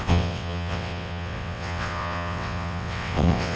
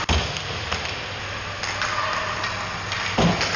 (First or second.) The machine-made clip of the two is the first